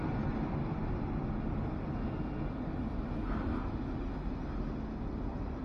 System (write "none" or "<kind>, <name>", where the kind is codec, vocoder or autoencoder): none